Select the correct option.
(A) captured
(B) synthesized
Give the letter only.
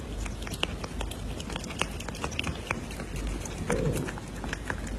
A